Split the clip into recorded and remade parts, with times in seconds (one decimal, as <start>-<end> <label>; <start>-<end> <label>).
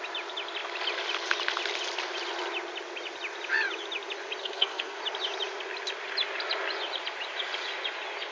0.0-4.4 recorded; 4.4-5.0 remade; 5.0-8.3 recorded